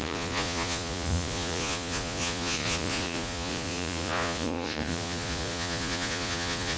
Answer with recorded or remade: remade